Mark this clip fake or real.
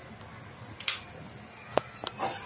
real